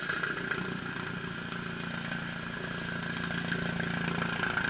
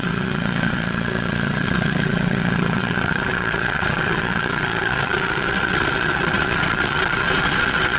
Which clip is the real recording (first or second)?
first